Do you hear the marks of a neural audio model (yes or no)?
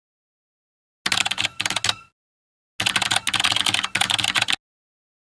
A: no